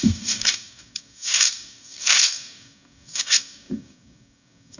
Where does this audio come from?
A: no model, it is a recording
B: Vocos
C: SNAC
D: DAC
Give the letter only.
D